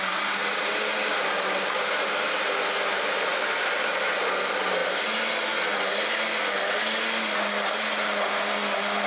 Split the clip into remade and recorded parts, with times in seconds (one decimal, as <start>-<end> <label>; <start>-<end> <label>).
0.0-9.1 recorded